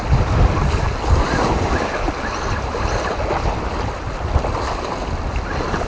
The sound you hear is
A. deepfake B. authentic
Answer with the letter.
B